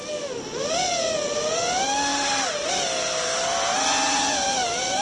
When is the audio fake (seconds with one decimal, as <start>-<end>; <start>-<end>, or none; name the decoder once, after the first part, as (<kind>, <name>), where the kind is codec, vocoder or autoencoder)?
3.3-5.0 (vocoder, BigVGAN v2)